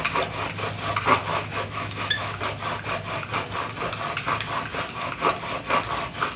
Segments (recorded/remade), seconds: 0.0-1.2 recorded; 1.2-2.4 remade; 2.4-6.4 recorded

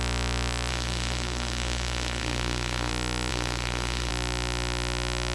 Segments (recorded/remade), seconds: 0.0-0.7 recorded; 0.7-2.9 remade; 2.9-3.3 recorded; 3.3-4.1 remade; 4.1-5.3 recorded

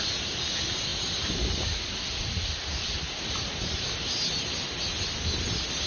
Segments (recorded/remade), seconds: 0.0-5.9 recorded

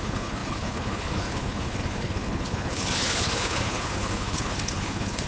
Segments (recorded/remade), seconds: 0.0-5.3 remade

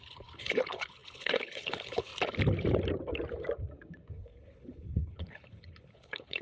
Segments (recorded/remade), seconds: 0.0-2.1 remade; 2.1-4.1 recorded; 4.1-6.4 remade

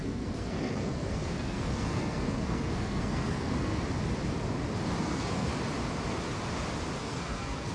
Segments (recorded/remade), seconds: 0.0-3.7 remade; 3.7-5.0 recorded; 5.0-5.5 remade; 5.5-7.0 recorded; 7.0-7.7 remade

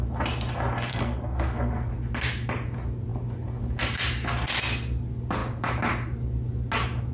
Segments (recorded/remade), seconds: 0.0-0.9 recorded; 0.9-1.9 remade; 1.9-7.1 recorded